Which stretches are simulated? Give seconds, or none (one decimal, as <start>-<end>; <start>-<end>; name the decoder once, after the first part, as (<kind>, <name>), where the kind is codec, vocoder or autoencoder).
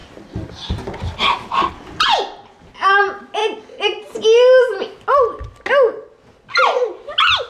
none